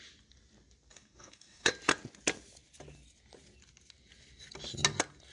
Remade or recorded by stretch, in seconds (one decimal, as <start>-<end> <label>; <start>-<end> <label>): 0.0-0.9 recorded; 0.9-1.7 remade; 1.7-5.3 recorded